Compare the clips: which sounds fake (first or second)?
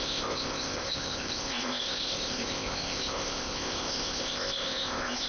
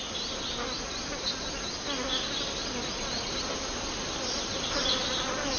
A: first